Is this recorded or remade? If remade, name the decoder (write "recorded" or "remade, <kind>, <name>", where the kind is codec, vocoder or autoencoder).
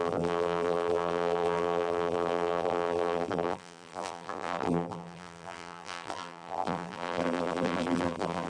remade, vocoder, BigVGAN v2